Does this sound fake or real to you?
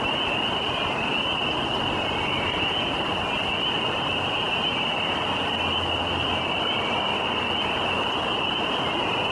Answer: real